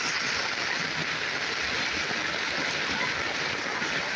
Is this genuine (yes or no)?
yes